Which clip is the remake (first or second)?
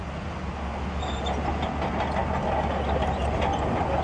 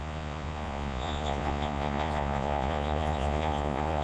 second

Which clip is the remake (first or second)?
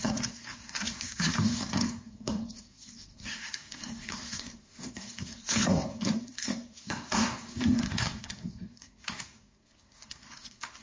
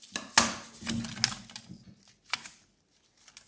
first